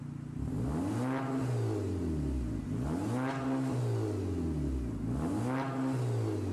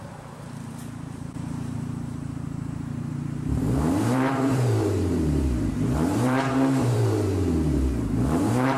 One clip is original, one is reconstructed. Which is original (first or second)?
first